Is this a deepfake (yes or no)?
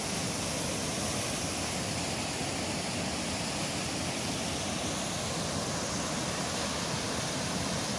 no